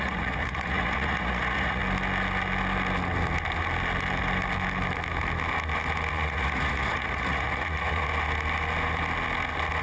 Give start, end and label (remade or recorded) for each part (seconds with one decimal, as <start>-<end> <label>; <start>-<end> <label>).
0.0-1.8 remade; 1.8-6.1 recorded; 6.1-8.1 remade; 8.1-9.8 recorded